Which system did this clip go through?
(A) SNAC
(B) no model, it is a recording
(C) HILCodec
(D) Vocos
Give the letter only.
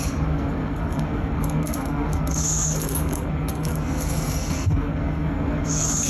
A